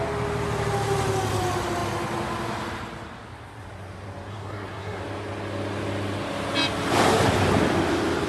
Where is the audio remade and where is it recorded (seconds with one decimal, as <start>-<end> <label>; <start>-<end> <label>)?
0.0-4.3 recorded; 4.3-5.0 remade; 5.0-8.3 recorded